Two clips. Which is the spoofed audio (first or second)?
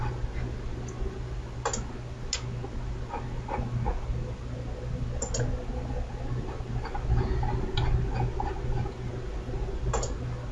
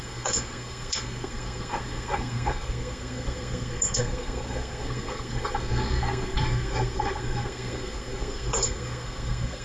second